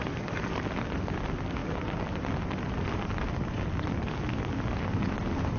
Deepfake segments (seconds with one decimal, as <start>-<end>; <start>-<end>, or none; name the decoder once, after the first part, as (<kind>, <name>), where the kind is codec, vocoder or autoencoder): none